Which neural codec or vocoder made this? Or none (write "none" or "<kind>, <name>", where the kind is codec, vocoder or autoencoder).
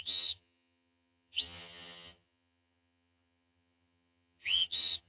vocoder, HiFi-GAN